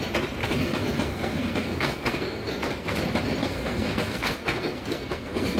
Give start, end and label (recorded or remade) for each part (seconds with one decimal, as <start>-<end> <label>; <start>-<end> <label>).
0.0-0.4 recorded; 0.4-3.0 remade; 3.0-3.4 recorded; 3.4-5.6 remade